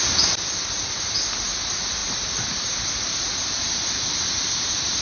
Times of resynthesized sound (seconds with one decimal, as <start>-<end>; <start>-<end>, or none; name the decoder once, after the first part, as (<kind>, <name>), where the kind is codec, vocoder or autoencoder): none